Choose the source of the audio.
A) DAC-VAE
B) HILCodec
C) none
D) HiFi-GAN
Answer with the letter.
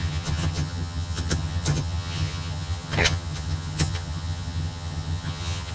D